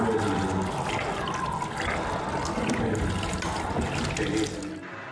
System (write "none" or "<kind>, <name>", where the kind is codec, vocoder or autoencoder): none